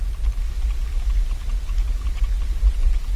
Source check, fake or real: real